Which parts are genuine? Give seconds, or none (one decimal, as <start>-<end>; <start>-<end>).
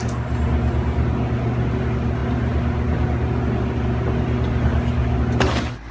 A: 0.0-5.9